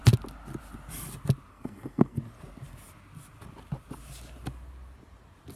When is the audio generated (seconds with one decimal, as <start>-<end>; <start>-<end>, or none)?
1.5-2.2